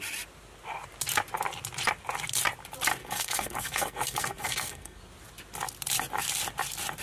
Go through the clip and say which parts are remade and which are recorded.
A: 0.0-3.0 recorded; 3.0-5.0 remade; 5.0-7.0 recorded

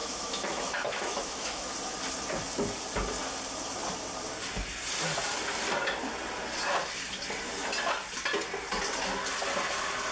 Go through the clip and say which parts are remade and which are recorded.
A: 0.0-1.7 remade; 1.7-10.1 recorded